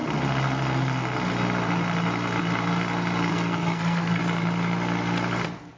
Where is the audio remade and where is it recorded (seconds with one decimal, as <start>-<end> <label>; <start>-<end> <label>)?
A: 0.0-3.3 recorded; 3.3-4.2 remade; 4.2-5.8 recorded

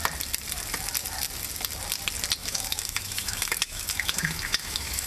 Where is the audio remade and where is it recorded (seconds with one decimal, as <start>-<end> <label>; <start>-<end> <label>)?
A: 0.0-2.4 recorded; 2.4-5.1 remade

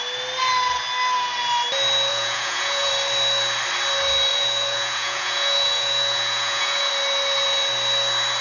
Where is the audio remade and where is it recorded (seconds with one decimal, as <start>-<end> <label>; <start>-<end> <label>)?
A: 0.0-2.1 recorded; 2.1-2.9 remade; 2.9-4.3 recorded; 4.3-6.9 remade; 6.9-8.4 recorded

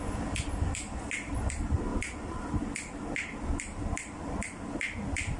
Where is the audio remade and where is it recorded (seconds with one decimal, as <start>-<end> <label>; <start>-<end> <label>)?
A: 0.0-5.4 recorded

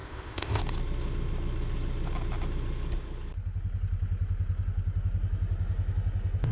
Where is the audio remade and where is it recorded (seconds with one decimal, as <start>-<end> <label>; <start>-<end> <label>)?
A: 0.0-0.6 remade; 0.6-6.5 recorded